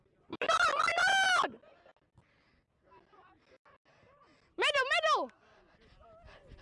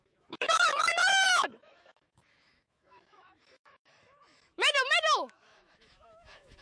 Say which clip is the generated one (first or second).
second